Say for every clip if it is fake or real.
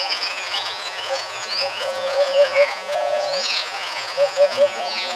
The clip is fake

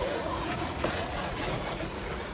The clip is fake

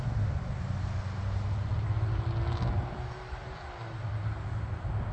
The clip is real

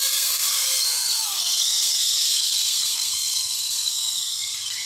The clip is fake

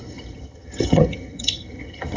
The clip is fake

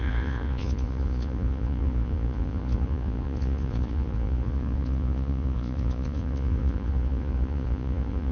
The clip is fake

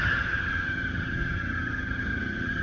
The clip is fake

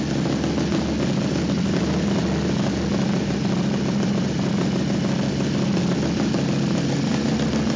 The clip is real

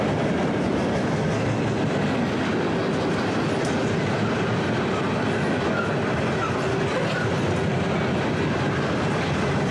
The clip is real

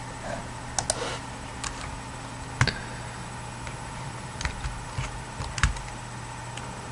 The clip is real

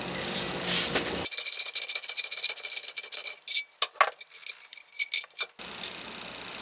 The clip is real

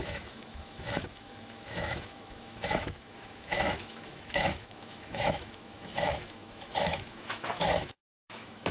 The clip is fake